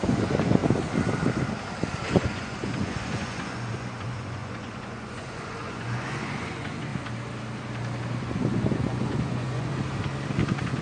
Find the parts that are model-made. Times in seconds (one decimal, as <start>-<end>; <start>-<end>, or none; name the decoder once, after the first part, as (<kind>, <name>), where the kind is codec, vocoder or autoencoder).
0.0-0.6 (vocoder, Vocos); 2.1-6.9; 8.2-9.7; 10.4-10.8